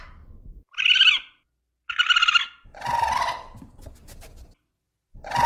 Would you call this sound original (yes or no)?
yes